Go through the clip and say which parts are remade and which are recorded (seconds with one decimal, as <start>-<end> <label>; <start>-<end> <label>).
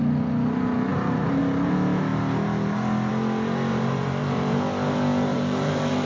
0.0-0.9 recorded; 0.9-1.4 remade; 1.4-3.7 recorded; 3.7-4.6 remade; 4.6-5.3 recorded; 5.3-6.1 remade